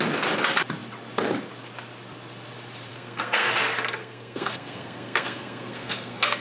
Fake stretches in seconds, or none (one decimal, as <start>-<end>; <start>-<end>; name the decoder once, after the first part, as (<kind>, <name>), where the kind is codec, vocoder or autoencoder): 2.9-3.5 (codec, SNAC); 4.0-6.4